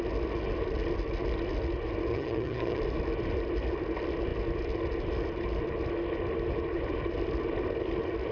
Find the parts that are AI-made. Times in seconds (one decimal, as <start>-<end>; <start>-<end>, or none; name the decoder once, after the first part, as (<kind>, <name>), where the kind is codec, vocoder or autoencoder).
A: 2.1-2.8 (vocoder, HiFi-GAN)